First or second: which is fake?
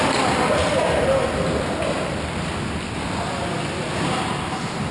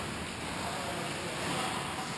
first